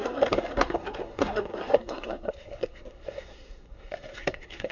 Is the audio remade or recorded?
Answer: remade